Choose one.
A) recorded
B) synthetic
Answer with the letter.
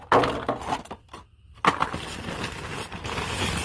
A